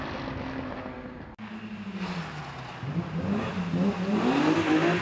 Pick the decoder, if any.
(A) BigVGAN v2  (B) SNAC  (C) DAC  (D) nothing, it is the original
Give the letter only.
D